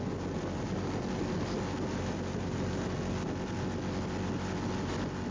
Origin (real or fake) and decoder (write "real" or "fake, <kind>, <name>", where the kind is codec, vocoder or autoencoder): real